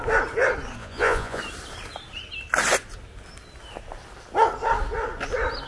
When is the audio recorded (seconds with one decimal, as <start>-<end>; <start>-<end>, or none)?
0.0-0.8; 1.4-5.7

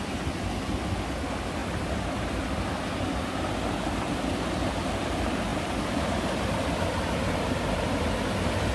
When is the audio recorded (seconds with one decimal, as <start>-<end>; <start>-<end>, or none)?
0.0-5.5; 8.1-8.7

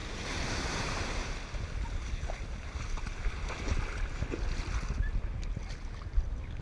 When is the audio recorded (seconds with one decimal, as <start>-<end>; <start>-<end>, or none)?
0.0-6.6